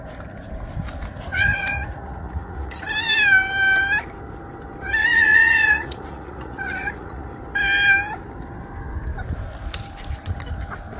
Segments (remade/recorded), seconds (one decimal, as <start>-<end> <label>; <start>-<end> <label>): 0.0-1.3 recorded; 1.3-2.9 remade; 2.9-5.0 recorded; 5.0-7.3 remade; 7.3-11.0 recorded